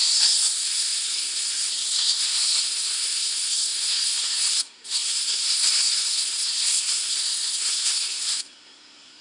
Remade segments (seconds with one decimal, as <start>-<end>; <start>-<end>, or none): 0.0-9.2